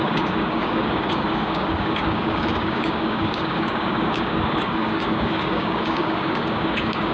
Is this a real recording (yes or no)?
no